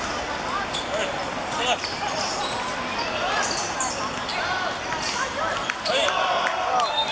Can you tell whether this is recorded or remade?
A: recorded